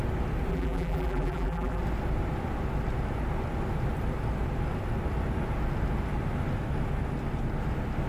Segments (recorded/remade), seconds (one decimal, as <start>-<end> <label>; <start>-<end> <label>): 0.0-0.5 recorded; 0.5-1.8 remade; 1.8-8.1 recorded